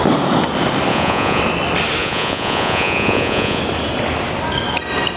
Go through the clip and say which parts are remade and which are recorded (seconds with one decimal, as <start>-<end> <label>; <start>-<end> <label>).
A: 0.0-0.9 recorded; 0.9-1.4 remade; 1.4-2.0 recorded; 2.0-3.6 remade; 3.6-5.2 recorded